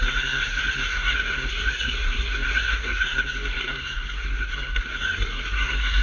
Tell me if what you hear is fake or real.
fake